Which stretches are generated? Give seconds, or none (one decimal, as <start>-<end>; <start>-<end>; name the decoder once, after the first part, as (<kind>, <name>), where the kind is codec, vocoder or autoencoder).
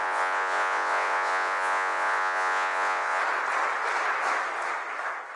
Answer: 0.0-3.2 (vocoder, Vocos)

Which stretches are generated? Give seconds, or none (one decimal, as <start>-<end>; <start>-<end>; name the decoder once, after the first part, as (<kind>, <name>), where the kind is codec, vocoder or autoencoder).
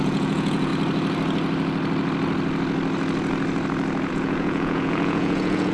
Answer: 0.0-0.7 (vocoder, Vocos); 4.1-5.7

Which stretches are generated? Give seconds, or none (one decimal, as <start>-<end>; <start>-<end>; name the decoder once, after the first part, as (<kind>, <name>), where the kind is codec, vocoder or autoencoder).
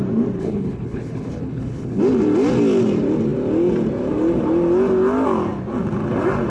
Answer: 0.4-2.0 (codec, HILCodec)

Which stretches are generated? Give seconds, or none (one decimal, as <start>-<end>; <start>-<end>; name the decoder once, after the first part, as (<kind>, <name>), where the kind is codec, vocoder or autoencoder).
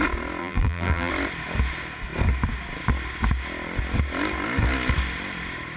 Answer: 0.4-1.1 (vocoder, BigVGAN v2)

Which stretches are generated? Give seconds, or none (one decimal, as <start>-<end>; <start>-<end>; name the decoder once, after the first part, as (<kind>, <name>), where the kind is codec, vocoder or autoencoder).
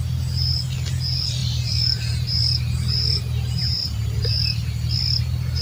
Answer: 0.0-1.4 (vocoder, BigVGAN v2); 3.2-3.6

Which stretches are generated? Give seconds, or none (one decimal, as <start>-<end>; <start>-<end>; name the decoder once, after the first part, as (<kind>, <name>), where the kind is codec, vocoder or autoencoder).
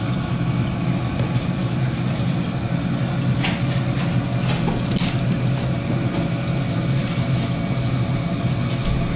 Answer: none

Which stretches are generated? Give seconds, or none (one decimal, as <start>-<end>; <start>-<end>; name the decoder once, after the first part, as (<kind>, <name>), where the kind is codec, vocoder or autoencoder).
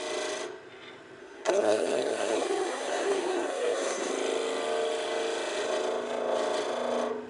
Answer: 1.2-4.1 (codec, SNAC)